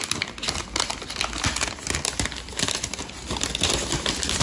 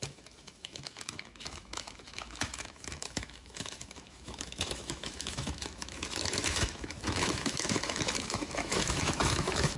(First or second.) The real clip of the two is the first